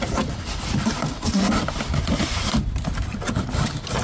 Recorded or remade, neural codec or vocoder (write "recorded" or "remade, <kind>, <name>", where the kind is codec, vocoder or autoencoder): remade, vocoder, BigVGAN v2